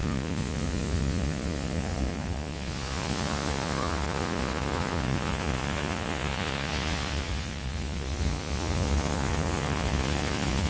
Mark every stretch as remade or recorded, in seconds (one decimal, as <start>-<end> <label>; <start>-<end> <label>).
0.0-10.7 remade